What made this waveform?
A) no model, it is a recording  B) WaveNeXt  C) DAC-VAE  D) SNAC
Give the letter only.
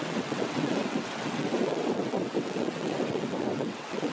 B